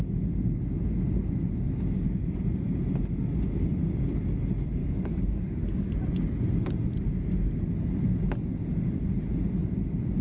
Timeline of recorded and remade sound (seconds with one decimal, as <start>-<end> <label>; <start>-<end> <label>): 0.0-4.8 recorded; 4.8-5.9 remade; 5.9-10.2 recorded